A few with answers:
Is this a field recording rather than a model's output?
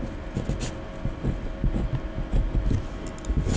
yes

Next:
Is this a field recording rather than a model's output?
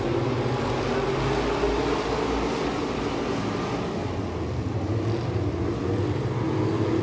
yes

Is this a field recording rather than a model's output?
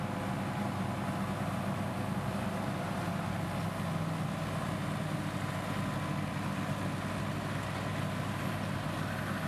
yes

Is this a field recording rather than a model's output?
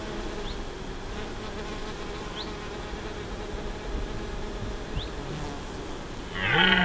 yes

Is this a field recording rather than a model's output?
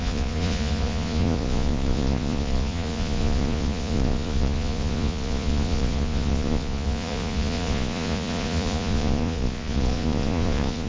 no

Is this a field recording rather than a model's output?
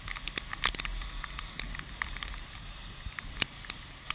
yes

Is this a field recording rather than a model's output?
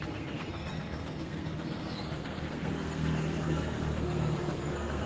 no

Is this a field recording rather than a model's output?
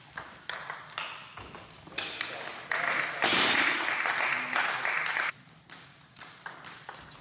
yes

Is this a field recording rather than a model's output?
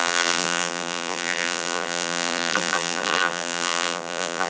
no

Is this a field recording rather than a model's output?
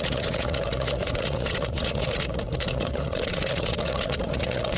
no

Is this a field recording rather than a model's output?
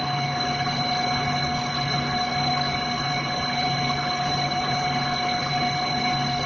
no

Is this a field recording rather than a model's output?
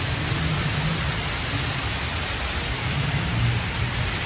yes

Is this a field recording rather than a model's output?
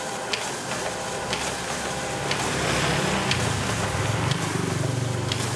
yes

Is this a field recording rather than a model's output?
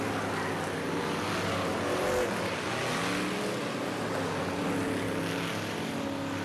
yes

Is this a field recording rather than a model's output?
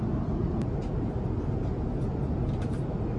yes